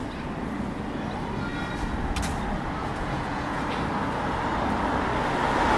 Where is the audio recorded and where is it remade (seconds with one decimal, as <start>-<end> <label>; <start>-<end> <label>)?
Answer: 0.0-2.8 recorded; 2.8-3.6 remade; 3.6-5.8 recorded